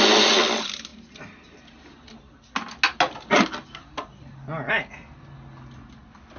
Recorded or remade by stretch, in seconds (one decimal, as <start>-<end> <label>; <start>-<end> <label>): 0.0-6.4 recorded